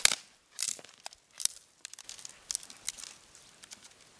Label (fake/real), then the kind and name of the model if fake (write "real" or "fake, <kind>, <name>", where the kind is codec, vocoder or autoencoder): real